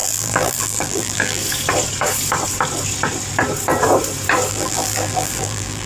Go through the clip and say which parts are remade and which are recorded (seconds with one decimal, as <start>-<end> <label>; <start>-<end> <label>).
0.0-1.4 remade; 1.4-4.5 recorded; 4.5-5.9 remade